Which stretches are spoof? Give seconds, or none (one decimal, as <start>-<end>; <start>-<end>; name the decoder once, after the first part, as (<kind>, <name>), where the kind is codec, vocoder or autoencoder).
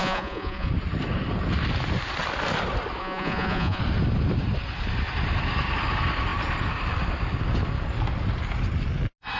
0.0-0.7 (vocoder, Vocos); 3.0-3.8